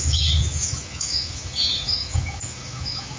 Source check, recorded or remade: remade